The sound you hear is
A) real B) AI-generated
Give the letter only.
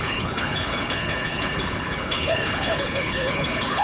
B